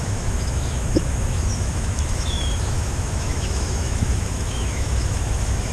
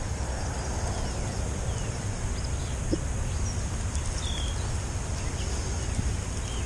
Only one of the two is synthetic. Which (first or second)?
first